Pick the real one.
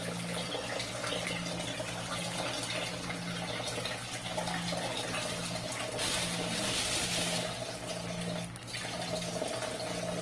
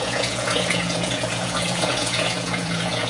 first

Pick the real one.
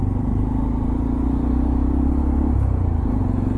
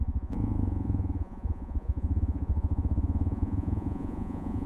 first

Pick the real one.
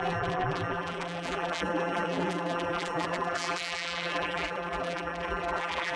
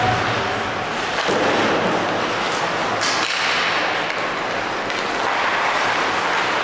second